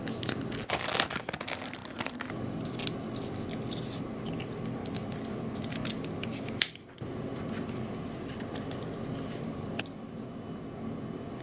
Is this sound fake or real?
real